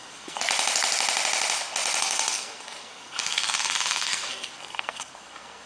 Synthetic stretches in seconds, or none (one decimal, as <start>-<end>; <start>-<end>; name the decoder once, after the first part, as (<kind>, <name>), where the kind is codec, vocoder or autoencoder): 0.0-0.4 (codec, SNAC); 2.0-5.7